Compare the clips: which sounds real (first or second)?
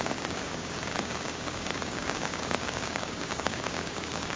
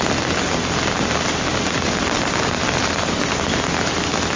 second